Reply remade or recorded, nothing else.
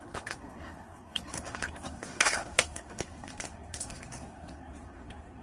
remade